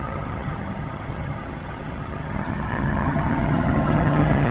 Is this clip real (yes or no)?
no